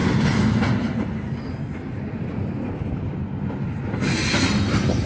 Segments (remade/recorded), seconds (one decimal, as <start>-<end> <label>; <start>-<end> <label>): 0.0-5.1 recorded